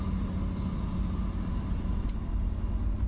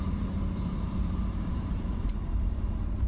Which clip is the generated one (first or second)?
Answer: second